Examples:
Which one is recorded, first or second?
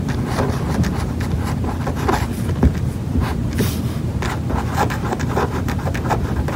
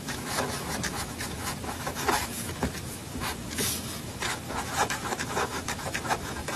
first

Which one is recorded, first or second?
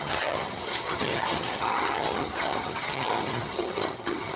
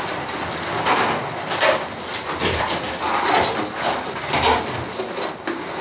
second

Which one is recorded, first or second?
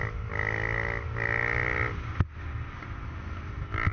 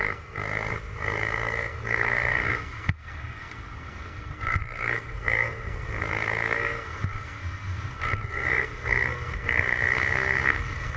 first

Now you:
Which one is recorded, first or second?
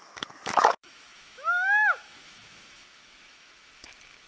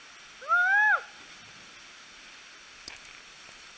second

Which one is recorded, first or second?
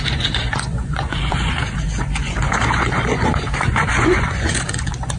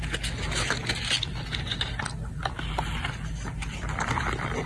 second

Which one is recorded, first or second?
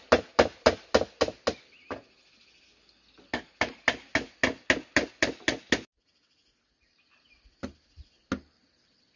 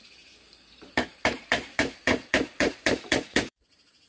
first